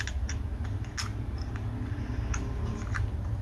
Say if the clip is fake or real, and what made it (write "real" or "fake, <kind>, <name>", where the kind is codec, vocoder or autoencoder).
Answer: real